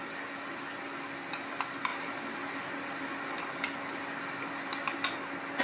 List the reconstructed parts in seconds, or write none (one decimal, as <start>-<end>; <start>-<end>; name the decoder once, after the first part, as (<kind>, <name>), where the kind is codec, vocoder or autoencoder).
none